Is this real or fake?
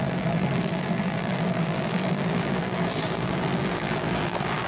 fake